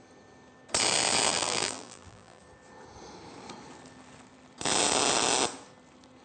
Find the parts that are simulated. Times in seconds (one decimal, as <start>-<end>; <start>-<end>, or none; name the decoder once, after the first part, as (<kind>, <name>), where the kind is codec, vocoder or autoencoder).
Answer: 1.3-2.4 (vocoder, BigVGAN v2)